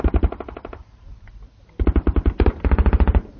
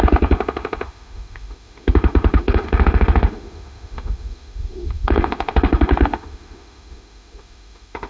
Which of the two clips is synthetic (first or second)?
second